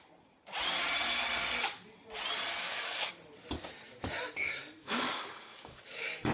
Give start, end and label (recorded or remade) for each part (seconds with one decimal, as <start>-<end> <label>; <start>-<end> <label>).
0.0-2.6 recorded; 2.6-3.1 remade; 3.1-4.8 recorded; 4.8-6.3 remade